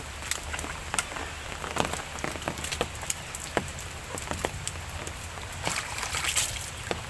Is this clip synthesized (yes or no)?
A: no